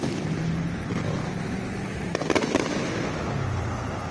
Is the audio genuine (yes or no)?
yes